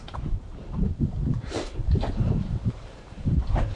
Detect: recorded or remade remade